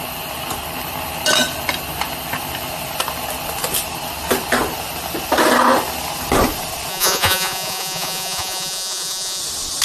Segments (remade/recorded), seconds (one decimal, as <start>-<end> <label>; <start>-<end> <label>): 0.0-6.9 recorded; 6.9-9.4 remade; 9.4-9.8 recorded